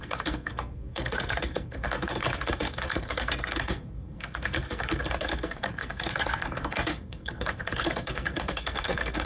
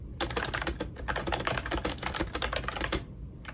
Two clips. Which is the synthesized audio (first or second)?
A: first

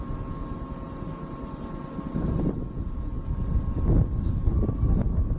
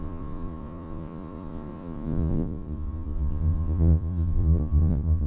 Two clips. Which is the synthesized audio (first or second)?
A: second